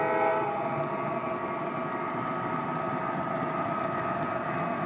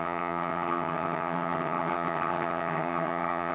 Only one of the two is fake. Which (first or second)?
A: second